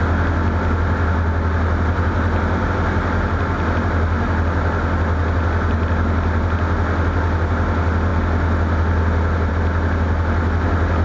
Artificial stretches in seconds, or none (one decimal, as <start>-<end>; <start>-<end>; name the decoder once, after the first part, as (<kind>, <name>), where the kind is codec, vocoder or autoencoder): none